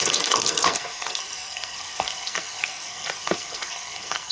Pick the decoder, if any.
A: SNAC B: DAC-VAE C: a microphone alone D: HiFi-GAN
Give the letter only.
A